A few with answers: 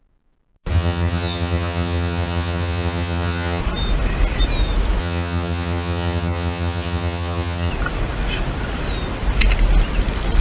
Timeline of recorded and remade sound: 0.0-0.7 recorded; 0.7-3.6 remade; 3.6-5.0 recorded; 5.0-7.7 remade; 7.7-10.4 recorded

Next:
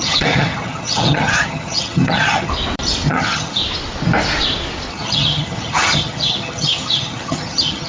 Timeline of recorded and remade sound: 0.0-2.5 remade; 2.5-3.1 recorded; 3.1-3.6 remade; 3.6-4.9 recorded; 4.9-7.9 remade

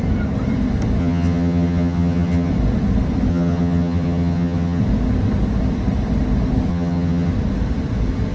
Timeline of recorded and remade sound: 0.0-1.0 recorded; 1.0-2.5 remade; 2.5-3.3 recorded; 3.3-4.8 remade; 4.8-6.7 recorded; 6.7-7.3 remade; 7.3-8.3 recorded

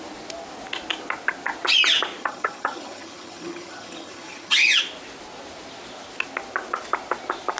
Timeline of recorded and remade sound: 0.0-2.2 recorded; 2.2-4.8 remade; 4.8-7.6 recorded

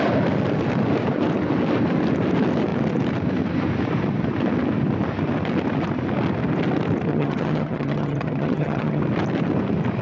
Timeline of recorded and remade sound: 0.0-7.1 recorded; 7.1-9.0 remade; 9.0-10.0 recorded